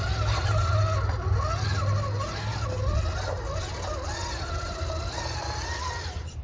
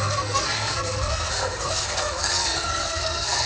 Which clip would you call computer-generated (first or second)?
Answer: second